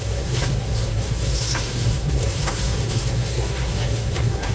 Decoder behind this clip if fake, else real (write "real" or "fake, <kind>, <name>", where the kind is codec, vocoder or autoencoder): fake, codec, SNAC